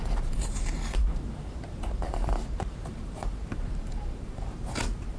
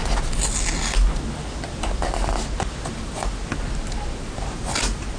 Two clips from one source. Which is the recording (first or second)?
second